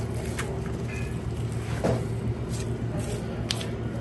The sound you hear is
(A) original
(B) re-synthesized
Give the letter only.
A